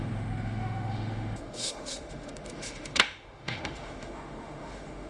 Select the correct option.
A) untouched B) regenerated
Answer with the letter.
B